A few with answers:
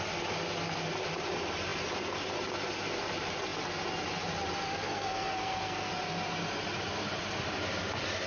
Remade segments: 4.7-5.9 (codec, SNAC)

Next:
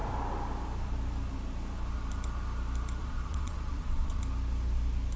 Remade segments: 3.0-4.2 (vocoder, Vocos)